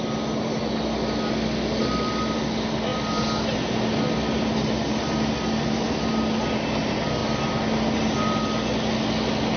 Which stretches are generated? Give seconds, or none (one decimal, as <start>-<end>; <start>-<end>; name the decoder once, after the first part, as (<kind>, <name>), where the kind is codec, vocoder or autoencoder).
none